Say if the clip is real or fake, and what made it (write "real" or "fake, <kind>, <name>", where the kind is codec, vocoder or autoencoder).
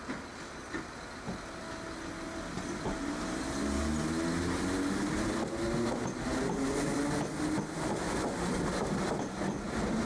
real